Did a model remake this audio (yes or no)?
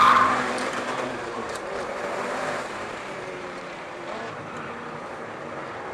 yes